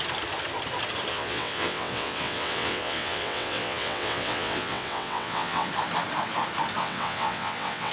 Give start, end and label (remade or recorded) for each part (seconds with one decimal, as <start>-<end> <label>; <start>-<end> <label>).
0.0-1.1 recorded; 1.1-5.7 remade; 5.7-6.8 recorded; 6.8-7.9 remade